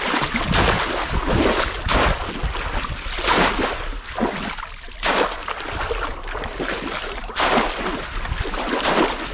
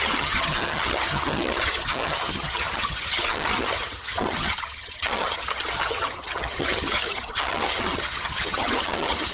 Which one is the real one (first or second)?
first